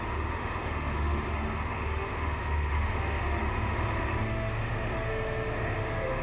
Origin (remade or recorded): remade